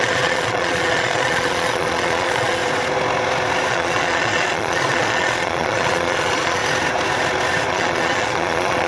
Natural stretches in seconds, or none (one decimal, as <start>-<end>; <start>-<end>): 2.6-3.7; 6.6-7.7